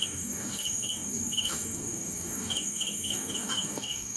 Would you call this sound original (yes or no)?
no